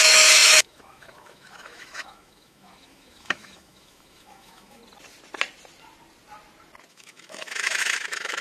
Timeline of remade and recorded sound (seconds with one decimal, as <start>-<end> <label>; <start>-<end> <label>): 0.0-4.8 remade; 4.8-6.9 recorded; 6.9-8.4 remade